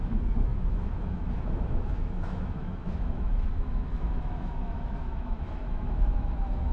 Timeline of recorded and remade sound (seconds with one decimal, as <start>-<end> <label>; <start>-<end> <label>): 0.0-6.7 remade